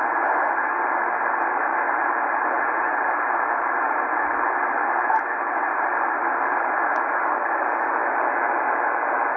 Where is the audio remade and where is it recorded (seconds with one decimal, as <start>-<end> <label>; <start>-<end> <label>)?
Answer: 0.0-9.4 recorded